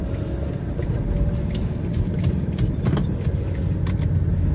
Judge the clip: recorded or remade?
recorded